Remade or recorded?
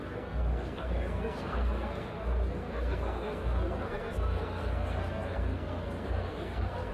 remade